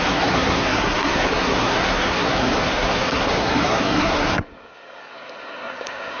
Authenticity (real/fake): fake